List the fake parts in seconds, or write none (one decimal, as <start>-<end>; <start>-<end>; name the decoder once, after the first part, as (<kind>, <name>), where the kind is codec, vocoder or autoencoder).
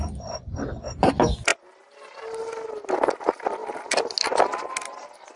none